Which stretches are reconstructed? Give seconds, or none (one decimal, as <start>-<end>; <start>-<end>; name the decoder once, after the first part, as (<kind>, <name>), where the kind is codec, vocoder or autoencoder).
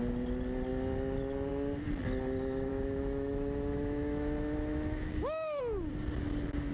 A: 2.7-5.6 (autoencoder, DAC-VAE)